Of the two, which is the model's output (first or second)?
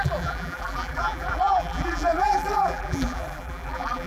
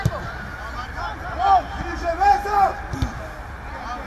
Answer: first